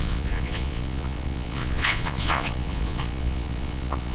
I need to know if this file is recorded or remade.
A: remade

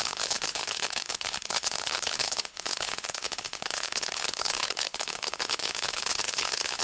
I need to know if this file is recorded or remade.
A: remade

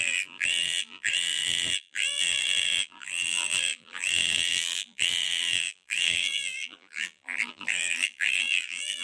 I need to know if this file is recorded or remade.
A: remade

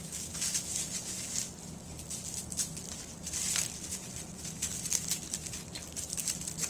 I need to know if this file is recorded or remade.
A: recorded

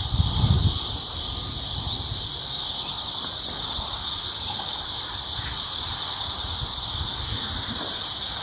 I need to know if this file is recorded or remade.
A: recorded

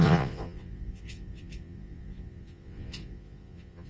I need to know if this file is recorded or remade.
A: remade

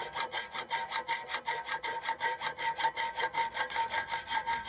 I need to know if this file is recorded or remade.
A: recorded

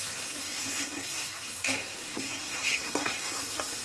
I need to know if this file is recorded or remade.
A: remade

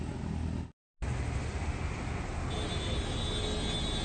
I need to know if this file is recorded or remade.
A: recorded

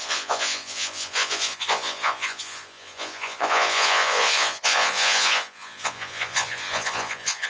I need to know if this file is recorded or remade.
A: remade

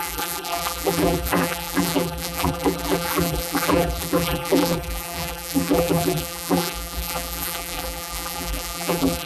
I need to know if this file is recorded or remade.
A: remade